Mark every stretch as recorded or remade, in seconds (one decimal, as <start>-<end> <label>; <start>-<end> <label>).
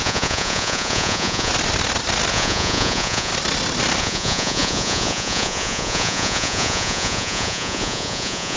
0.0-1.5 remade; 1.5-2.3 recorded; 2.3-3.3 remade; 3.3-4.0 recorded; 4.0-8.6 remade